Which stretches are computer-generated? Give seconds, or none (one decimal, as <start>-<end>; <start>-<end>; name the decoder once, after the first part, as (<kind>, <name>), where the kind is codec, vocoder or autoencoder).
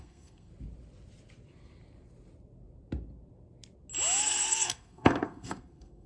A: 0.0-0.5 (codec, SNAC); 4.2-6.1